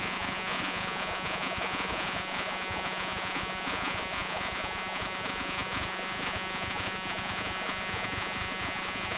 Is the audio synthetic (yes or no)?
yes